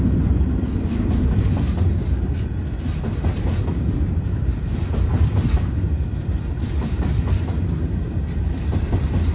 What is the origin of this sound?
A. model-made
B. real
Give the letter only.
B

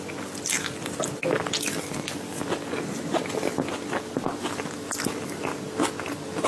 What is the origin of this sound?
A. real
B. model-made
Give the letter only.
A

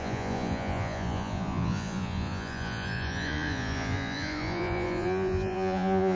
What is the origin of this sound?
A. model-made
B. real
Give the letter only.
A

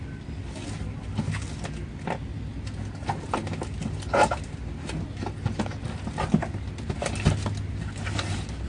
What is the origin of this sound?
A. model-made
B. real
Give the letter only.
B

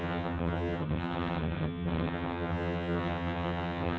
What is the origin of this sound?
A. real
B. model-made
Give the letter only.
B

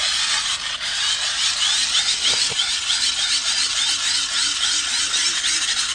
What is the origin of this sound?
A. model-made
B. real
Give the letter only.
B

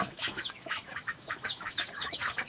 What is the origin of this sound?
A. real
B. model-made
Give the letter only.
B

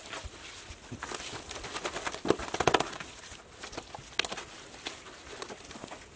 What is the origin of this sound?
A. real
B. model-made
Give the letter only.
A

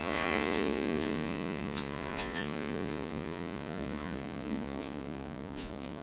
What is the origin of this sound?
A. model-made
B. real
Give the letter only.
A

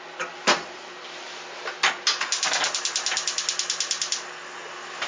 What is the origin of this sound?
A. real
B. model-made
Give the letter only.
A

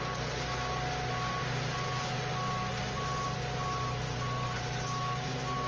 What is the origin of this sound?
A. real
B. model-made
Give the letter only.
A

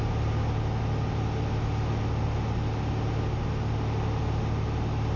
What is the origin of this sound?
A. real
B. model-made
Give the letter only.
A